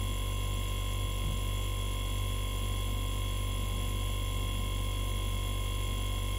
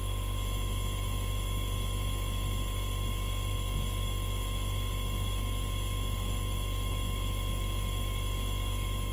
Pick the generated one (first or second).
second